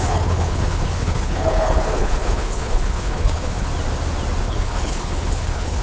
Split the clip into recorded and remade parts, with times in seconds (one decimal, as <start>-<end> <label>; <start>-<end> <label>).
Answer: 0.0-3.7 remade; 3.7-4.4 recorded; 4.4-5.8 remade